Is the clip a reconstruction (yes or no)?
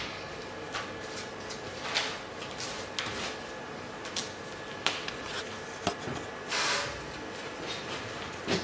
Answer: no